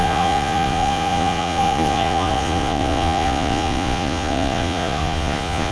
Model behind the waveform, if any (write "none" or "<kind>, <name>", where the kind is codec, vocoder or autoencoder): vocoder, Vocos